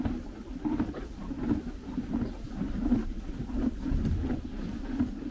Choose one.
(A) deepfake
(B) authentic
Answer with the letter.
B